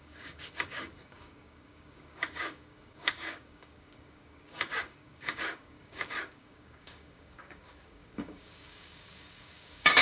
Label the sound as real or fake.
fake